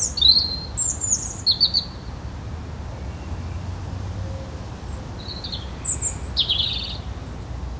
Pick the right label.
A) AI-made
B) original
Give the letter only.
B